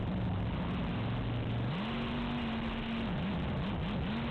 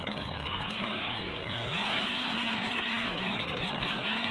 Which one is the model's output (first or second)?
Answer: second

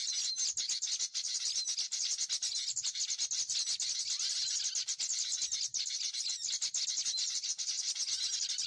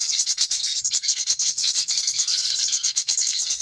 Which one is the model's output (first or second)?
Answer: second